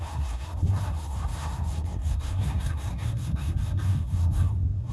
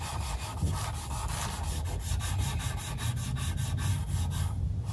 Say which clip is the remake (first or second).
first